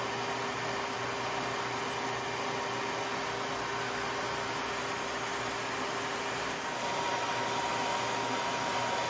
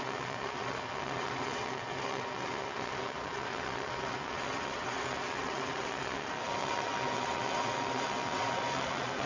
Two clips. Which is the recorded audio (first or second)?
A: first